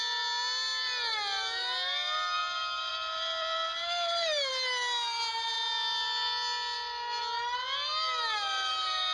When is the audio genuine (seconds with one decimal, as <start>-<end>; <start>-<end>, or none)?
0.0-9.1